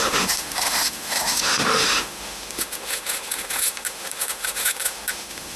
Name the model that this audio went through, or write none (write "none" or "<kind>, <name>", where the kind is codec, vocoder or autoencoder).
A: autoencoder, DAC-VAE